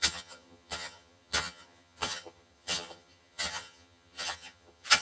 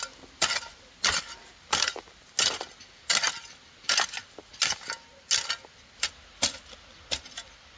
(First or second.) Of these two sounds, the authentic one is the second